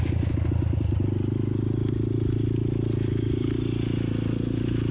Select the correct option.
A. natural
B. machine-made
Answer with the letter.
A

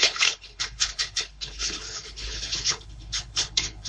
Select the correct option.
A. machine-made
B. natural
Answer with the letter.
A